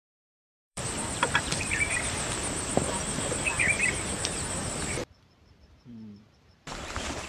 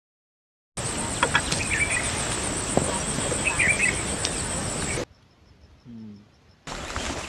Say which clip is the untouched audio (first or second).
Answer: second